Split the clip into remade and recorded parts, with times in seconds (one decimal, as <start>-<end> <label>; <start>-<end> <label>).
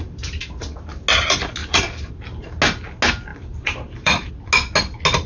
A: 0.0-1.6 recorded; 1.6-2.1 remade; 2.1-3.3 recorded; 3.3-4.3 remade; 4.3-5.3 recorded